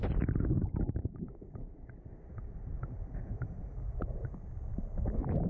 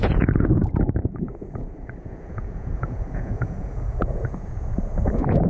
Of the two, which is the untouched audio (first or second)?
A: first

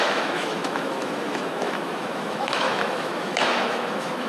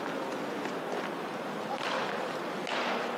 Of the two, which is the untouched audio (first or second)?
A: second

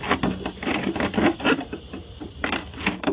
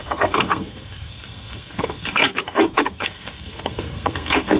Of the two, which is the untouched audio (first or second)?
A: first